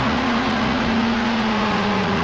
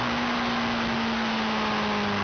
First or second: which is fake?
first